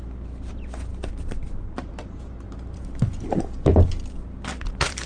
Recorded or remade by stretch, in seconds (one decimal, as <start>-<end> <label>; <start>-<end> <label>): 0.0-0.9 recorded; 0.9-3.2 remade; 3.2-4.5 recorded; 4.5-5.1 remade